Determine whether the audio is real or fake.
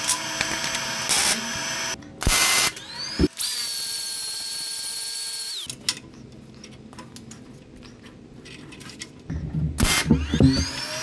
real